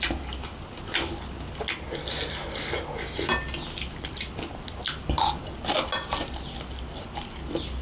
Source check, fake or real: real